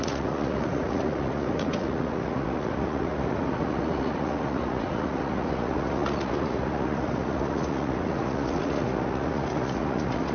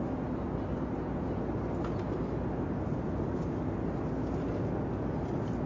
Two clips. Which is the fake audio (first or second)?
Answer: first